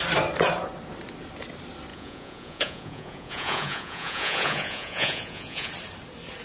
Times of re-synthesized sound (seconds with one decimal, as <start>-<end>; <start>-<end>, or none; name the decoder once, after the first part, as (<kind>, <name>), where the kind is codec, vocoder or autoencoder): 1.9-5.7 (vocoder, Vocos)